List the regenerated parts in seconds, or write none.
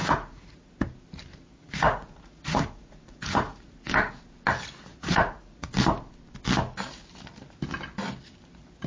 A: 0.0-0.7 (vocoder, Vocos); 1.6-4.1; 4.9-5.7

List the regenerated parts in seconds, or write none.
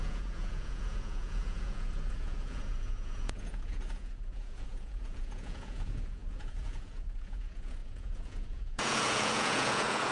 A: 0.0-10.1 (vocoder, Vocos)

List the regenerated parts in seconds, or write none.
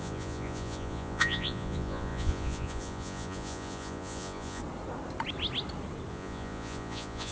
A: 0.0-4.6 (vocoder, Vocos); 6.1-7.3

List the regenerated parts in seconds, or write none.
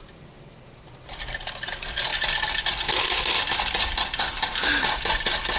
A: none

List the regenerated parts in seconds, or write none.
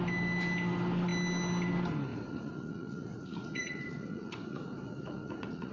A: 2.1-5.7 (vocoder, Vocos)